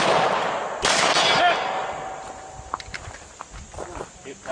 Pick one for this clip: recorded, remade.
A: recorded